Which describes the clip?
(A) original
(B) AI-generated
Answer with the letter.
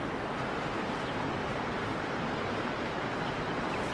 A